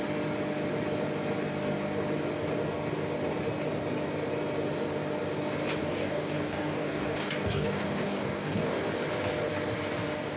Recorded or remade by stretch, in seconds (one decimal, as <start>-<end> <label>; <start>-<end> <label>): 0.0-5.8 recorded; 5.8-8.8 remade; 8.8-10.4 recorded